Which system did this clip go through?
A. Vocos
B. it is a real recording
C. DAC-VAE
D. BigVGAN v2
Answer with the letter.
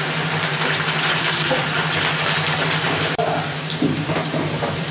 D